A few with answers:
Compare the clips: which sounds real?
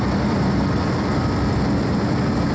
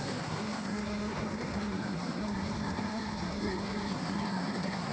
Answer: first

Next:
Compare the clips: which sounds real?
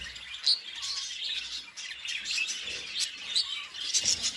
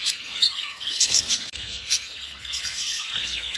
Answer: first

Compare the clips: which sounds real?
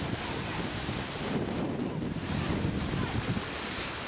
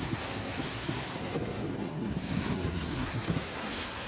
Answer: first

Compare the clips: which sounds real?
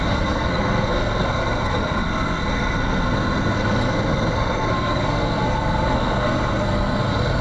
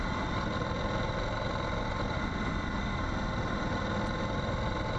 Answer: second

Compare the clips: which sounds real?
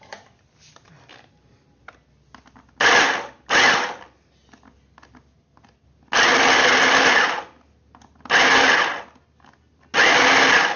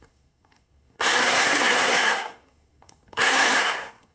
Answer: first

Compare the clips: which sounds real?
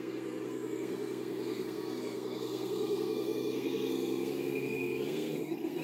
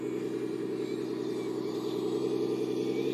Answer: second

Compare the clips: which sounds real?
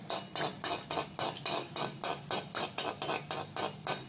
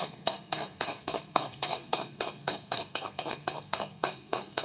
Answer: first